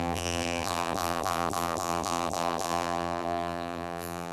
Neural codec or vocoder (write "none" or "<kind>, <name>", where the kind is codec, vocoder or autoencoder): vocoder, BigVGAN v2